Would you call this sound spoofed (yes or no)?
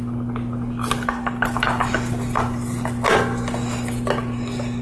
no